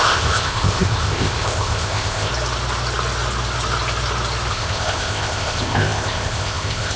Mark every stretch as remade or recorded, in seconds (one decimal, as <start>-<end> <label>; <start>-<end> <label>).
0.0-2.3 remade; 2.3-4.5 recorded; 4.5-7.0 remade